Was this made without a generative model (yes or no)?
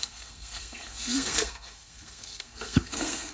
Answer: no